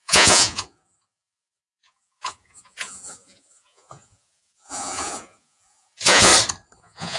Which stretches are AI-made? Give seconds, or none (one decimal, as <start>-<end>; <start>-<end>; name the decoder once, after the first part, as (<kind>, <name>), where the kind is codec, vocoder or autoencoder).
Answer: 0.0-6.3 (vocoder, Vocos); 6.8-7.2